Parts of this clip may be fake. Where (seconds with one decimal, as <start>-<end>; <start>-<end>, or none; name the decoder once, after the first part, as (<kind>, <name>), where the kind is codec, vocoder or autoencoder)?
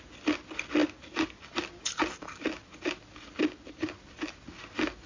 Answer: none